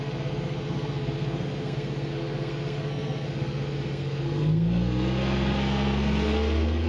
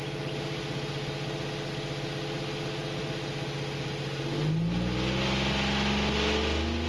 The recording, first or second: second